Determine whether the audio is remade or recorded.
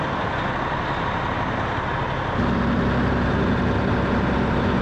recorded